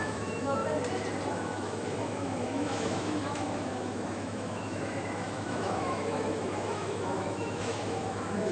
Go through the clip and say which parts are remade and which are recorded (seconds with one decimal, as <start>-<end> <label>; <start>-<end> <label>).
0.0-0.6 remade; 0.6-1.3 recorded; 1.3-8.5 remade